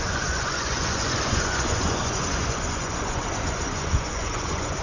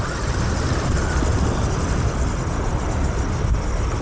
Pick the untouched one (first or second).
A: second